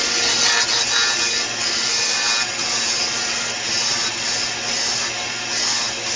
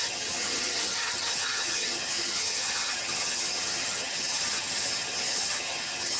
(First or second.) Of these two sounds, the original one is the first